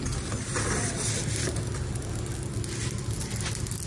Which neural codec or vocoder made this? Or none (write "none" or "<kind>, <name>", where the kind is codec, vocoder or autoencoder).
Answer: none